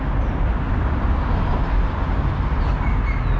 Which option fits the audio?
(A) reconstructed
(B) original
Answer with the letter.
B